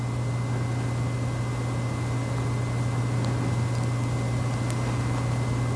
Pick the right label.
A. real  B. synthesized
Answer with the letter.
A